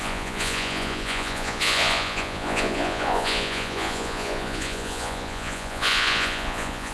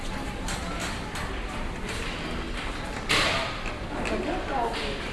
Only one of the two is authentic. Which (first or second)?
second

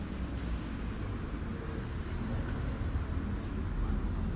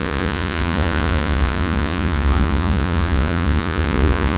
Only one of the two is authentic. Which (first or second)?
first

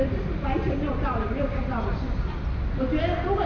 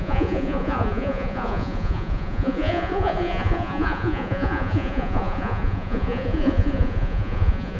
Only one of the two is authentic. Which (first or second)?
first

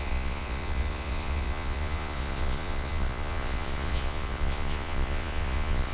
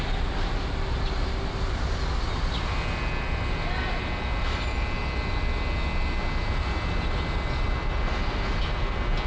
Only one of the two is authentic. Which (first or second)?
second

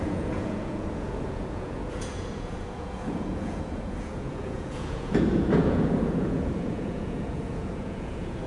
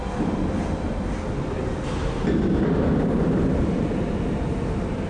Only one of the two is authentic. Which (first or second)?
second